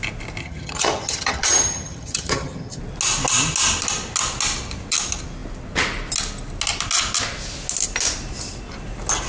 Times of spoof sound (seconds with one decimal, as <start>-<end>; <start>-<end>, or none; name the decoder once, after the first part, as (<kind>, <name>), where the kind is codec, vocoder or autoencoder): 0.4-2.8 (vocoder, HiFi-GAN)